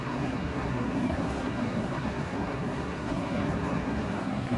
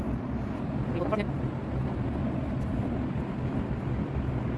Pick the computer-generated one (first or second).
first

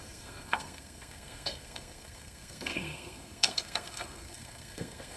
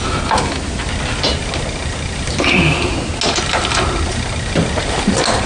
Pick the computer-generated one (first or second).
first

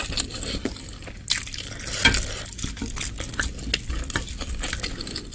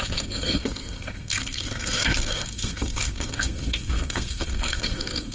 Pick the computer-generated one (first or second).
second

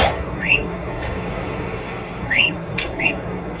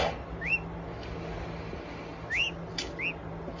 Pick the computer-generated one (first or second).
first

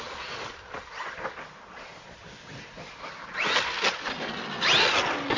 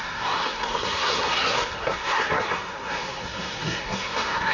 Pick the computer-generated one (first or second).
second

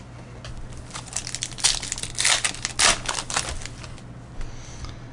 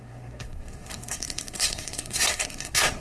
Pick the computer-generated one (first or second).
second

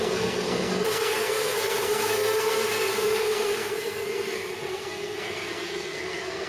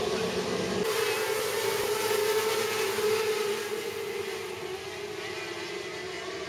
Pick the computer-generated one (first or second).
first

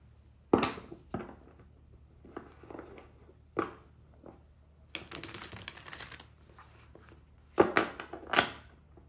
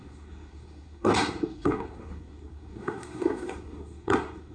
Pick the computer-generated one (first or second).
second